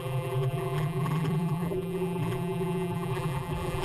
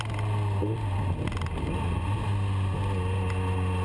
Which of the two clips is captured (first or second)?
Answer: second